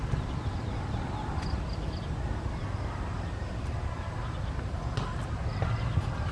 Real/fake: real